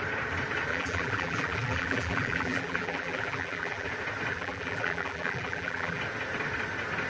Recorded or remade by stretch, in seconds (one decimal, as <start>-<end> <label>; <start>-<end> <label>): 0.0-0.7 recorded; 0.7-3.9 remade; 3.9-4.3 recorded; 4.3-6.0 remade; 6.0-7.1 recorded